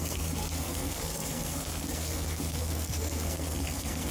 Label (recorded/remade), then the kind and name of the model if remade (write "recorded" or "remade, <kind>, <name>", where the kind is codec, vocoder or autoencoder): remade, codec, SNAC